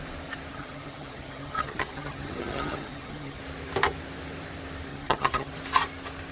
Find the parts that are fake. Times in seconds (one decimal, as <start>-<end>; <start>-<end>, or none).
0.5-3.4; 4.9-5.5